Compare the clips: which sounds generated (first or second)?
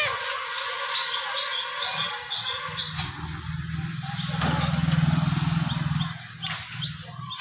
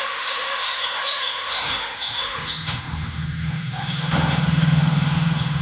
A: second